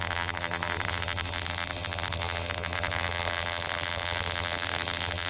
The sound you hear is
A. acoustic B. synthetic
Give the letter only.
B